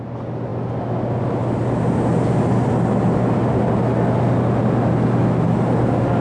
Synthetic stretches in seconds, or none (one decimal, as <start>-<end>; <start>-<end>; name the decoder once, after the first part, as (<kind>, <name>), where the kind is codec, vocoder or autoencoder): none